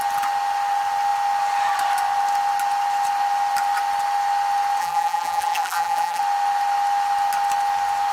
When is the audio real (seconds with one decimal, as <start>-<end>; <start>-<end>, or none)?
0.0-4.8; 6.2-8.1